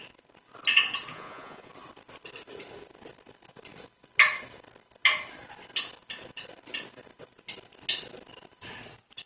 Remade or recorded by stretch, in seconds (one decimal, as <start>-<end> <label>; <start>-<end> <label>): 0.0-1.1 recorded; 1.1-1.7 remade; 1.7-9.3 recorded